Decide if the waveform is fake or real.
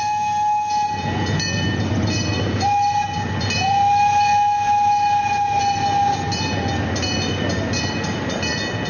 real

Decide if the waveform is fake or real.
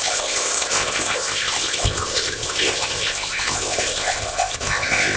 fake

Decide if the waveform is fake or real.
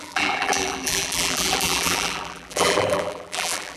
fake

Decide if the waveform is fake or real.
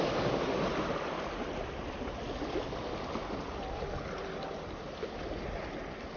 real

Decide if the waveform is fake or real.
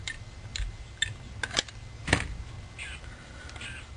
real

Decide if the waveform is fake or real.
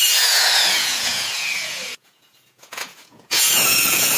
fake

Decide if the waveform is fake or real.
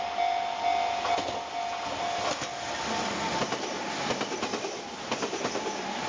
real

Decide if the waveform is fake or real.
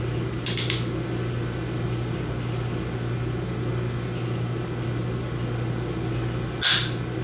real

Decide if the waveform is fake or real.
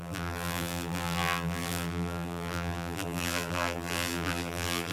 fake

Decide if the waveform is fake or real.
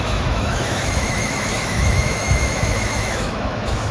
fake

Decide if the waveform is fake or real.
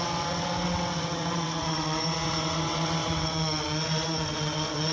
fake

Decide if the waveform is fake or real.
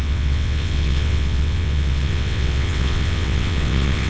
fake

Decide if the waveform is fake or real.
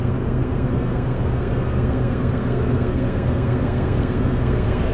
fake